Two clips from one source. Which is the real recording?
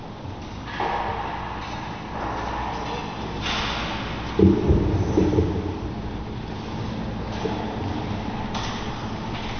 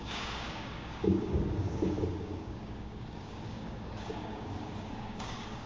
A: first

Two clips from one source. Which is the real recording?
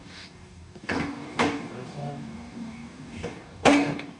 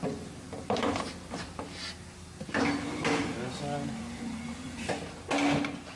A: second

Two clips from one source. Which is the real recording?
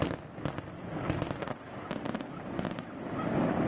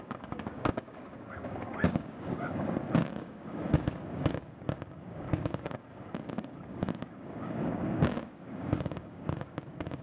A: first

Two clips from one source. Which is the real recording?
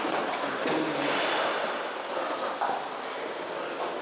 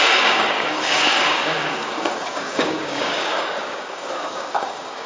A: first